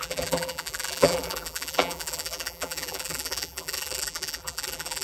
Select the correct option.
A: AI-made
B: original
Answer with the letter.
A